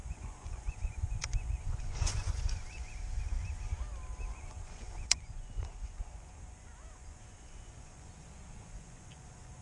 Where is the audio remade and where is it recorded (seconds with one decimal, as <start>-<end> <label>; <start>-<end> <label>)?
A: 0.0-3.7 remade; 3.7-4.3 recorded; 4.3-9.6 remade